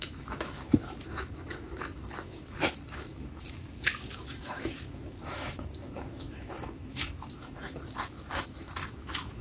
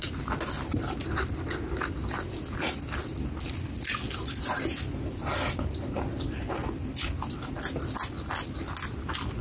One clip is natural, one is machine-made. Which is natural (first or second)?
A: second